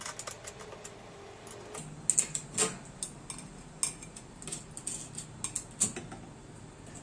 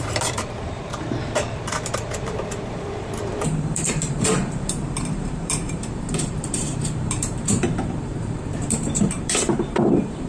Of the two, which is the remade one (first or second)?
second